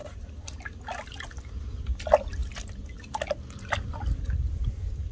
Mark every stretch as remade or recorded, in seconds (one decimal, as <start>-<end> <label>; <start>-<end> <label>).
0.0-5.1 recorded